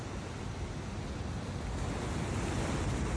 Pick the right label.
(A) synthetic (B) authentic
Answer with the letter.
B